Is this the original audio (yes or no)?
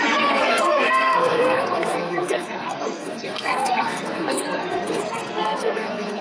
no